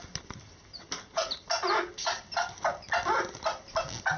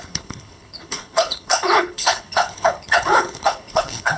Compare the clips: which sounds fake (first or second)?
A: second